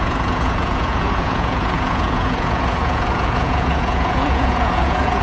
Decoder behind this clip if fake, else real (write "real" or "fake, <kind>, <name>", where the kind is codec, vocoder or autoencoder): fake, vocoder, Vocos